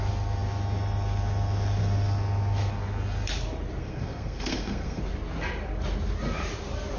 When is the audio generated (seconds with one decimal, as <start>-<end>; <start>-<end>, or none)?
3.8-5.0